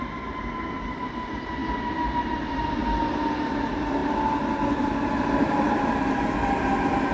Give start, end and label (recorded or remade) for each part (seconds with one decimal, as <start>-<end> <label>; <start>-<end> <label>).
0.0-7.1 recorded